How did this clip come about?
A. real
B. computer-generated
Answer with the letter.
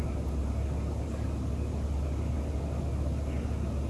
A